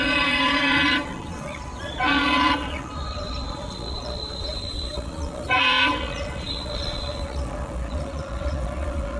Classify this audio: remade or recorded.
remade